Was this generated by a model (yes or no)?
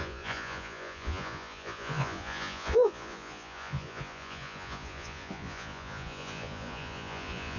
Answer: yes